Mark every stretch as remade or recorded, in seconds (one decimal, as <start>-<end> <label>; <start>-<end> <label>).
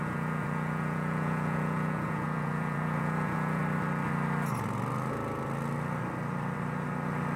0.0-3.6 remade; 3.6-7.4 recorded